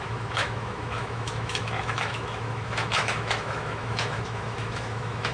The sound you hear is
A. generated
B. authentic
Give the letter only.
A